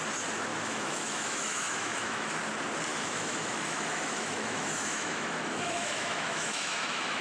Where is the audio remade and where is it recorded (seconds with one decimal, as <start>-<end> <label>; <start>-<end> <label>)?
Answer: 0.0-0.5 recorded; 0.5-2.4 remade; 2.4-2.9 recorded; 2.9-7.2 remade